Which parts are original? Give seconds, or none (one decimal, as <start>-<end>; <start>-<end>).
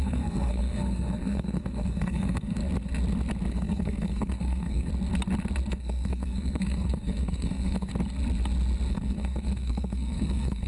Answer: 2.6-3.5; 4.9-5.7; 7.9-8.9